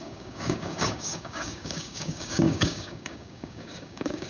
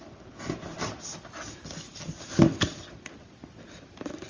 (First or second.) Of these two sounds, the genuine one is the second